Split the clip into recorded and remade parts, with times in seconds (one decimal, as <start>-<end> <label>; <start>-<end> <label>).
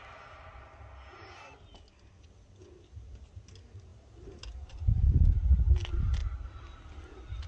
0.0-6.2 recorded; 6.2-6.7 remade; 6.7-7.5 recorded